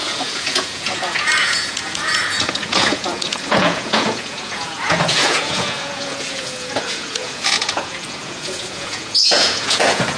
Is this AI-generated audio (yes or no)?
yes